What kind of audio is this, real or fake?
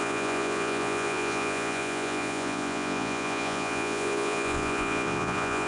fake